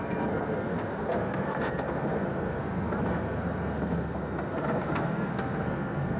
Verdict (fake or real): fake